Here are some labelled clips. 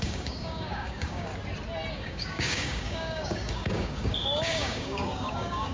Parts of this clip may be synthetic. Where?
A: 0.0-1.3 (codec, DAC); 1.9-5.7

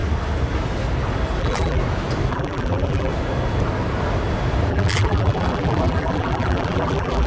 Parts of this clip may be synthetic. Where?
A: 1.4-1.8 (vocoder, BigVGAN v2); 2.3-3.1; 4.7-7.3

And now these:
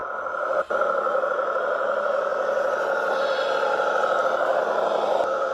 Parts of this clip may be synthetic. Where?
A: none

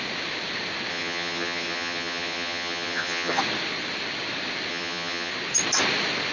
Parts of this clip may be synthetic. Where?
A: 0.9-3.4 (vocoder, HiFi-GAN); 4.7-5.3

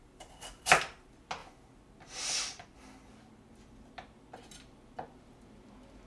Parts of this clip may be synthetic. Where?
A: none

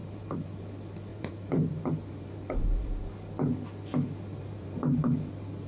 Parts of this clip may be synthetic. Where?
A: 0.0-0.6 (vocoder, BigVGAN v2); 1.1-3.1; 4.3-5.7